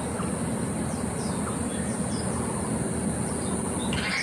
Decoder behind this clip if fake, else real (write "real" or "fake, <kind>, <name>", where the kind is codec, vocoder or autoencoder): real